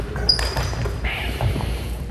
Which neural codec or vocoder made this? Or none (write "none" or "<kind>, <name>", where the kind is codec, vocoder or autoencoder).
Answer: vocoder, BigVGAN v2